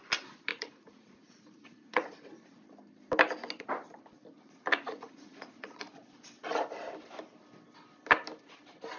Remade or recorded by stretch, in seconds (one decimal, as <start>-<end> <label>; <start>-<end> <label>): 0.0-0.5 recorded; 0.5-2.3 remade; 2.3-4.7 recorded; 4.7-6.0 remade; 6.0-9.0 recorded